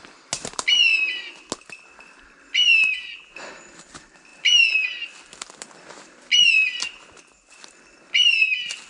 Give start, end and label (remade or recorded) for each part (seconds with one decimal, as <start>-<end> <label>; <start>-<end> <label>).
0.0-8.9 recorded